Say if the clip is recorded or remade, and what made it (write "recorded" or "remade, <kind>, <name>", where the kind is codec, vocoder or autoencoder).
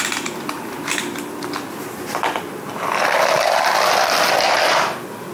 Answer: recorded